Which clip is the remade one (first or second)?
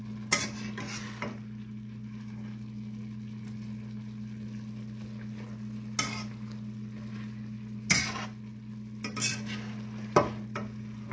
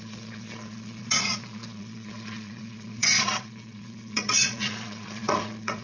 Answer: second